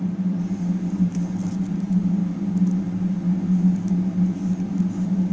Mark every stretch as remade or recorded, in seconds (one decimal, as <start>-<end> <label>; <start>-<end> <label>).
0.0-5.3 recorded